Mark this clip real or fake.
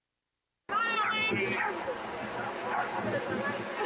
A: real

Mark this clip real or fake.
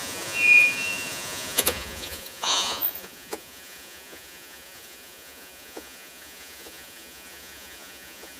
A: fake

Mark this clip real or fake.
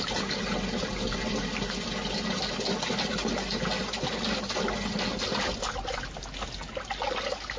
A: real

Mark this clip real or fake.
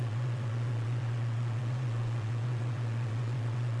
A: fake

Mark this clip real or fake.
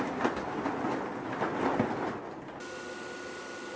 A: real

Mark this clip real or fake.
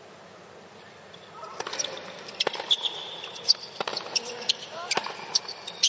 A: real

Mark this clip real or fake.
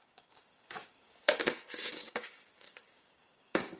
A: fake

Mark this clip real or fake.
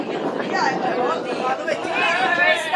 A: real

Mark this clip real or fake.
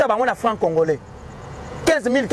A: fake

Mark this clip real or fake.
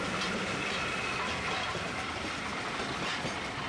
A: real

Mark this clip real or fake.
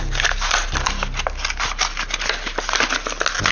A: real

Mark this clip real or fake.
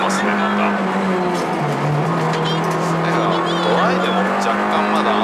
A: real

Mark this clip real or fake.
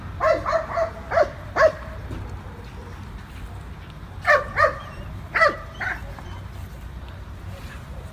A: real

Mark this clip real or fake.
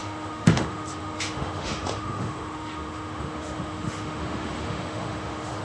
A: fake